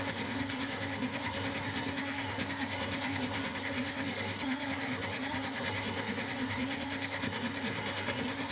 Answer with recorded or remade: remade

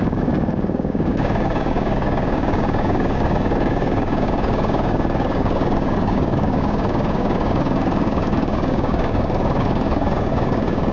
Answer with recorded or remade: remade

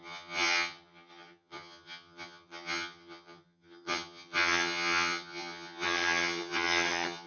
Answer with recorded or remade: remade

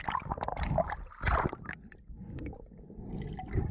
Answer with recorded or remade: remade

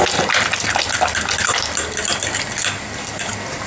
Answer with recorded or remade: recorded